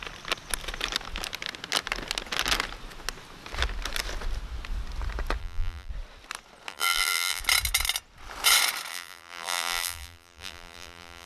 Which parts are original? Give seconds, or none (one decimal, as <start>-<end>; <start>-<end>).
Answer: 0.0-5.4; 5.9-6.7; 7.4-8.9